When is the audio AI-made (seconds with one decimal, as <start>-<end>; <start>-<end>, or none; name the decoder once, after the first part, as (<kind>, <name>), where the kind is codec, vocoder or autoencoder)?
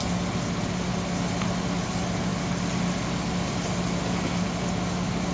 none